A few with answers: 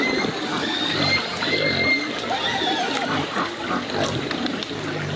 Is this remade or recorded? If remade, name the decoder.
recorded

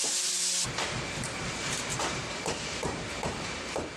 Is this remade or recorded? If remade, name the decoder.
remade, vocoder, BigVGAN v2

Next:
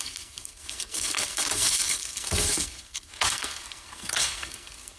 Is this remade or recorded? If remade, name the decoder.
remade, codec, SNAC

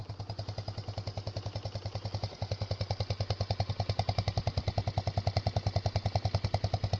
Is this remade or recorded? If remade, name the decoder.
recorded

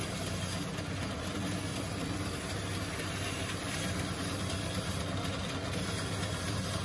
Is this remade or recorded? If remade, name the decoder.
recorded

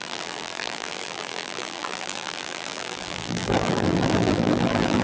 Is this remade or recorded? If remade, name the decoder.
remade, vocoder, BigVGAN v2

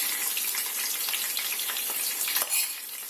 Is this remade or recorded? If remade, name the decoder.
recorded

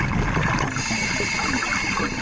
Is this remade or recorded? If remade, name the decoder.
recorded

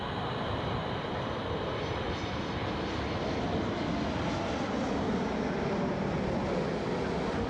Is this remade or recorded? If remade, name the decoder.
recorded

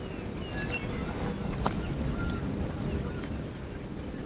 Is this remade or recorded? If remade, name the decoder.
recorded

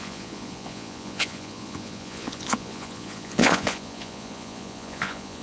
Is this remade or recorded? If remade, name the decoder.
remade, vocoder, Vocos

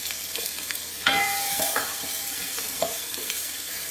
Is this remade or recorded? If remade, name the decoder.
remade, codec, SNAC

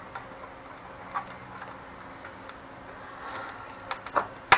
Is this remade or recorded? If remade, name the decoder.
recorded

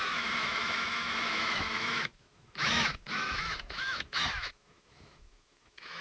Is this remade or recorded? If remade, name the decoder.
remade, autoencoder, DAC-VAE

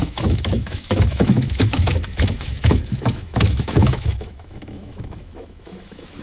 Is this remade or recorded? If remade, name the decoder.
remade, autoencoder, DAC-VAE